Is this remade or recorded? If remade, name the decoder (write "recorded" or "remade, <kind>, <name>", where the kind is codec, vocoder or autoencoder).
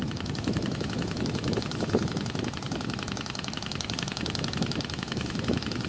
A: remade, autoencoder, DAC-VAE